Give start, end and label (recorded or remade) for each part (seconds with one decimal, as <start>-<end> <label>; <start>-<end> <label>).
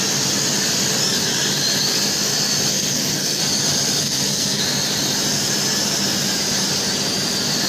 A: 0.0-2.7 recorded; 2.7-3.4 remade; 3.4-4.0 recorded; 4.0-4.6 remade; 4.6-7.7 recorded